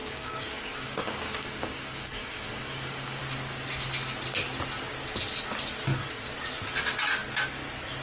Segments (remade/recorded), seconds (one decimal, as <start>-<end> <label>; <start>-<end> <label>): 0.0-3.2 remade; 3.2-8.0 recorded